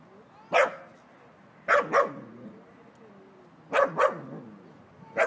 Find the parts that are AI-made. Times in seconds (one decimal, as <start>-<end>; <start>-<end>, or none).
none